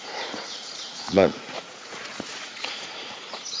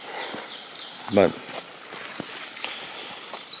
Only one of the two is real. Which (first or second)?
second